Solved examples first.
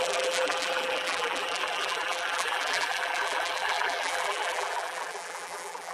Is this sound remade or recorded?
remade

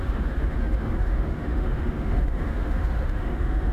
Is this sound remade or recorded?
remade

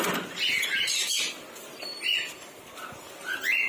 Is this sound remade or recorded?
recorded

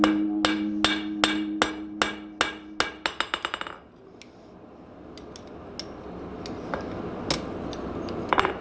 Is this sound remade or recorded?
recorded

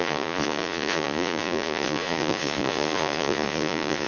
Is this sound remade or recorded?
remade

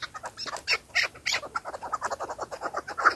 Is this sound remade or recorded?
recorded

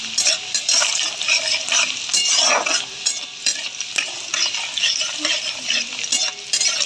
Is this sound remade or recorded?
recorded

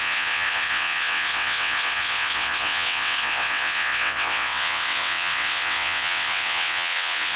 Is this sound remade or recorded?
remade